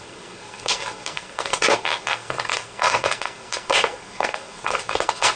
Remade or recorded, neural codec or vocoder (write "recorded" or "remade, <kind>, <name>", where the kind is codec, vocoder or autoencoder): remade, codec, SNAC